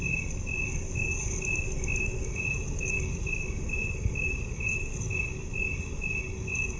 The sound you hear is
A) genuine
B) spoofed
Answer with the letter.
A